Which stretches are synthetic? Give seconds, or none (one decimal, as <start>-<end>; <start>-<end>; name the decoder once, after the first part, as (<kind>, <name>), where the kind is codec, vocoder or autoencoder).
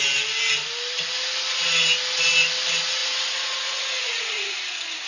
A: 3.0-5.1 (vocoder, Vocos)